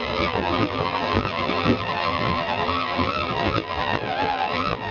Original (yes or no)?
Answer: no